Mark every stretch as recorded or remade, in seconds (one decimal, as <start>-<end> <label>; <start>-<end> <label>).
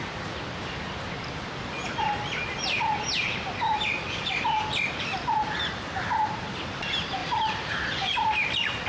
0.0-7.2 recorded; 7.2-8.9 remade